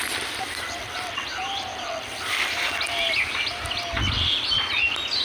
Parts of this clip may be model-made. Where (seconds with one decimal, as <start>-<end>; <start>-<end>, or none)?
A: 1.3-1.9